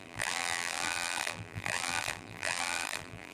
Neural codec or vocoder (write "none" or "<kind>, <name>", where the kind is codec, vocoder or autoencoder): vocoder, BigVGAN v2